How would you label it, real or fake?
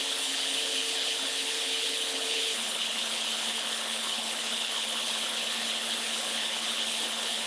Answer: fake